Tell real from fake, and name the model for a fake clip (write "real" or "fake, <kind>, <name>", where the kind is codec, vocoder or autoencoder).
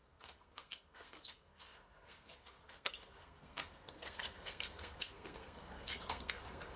fake, codec, SNAC